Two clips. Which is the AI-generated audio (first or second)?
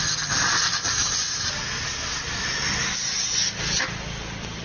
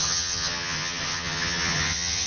second